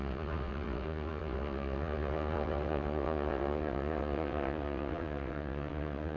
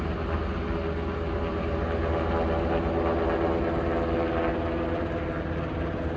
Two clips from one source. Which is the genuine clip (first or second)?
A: second